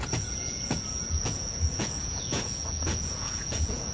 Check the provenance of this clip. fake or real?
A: fake